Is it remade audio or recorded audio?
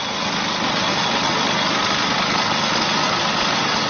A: recorded